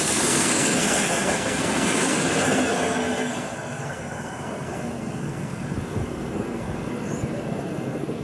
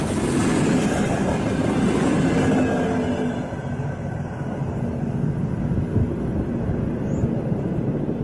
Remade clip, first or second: first